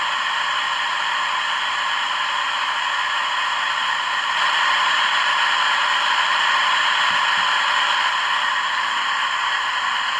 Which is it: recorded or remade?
remade